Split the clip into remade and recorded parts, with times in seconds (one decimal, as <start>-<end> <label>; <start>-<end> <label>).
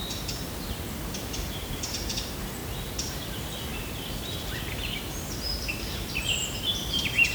0.0-7.3 remade